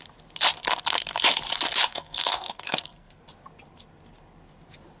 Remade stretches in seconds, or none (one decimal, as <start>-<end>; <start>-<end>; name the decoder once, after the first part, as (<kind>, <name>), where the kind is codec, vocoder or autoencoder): 1.9-3.2 (codec, SNAC)